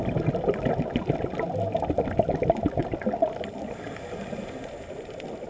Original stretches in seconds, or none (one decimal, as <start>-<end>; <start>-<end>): 0.0-5.5

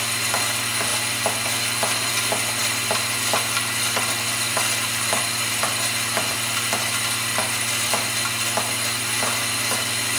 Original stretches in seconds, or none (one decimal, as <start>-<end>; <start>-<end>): 0.0-2.6; 7.9-10.2

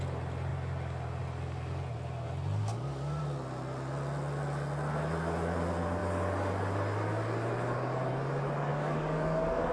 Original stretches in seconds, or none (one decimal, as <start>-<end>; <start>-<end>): 0.0-2.6; 3.2-8.7

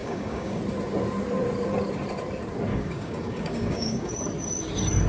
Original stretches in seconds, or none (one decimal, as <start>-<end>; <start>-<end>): 0.6-2.7; 4.1-5.1

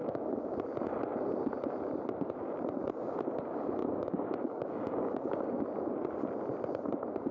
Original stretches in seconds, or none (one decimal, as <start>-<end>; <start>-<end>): 0.6-3.8; 5.6-7.3

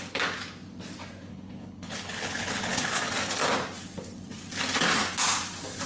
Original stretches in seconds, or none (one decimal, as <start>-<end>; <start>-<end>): 0.0-1.3; 3.0-5.9